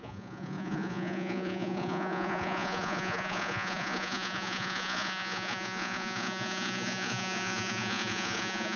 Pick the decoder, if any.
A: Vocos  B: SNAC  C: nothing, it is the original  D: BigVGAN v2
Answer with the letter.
A